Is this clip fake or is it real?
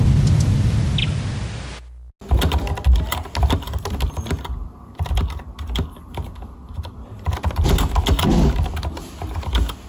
real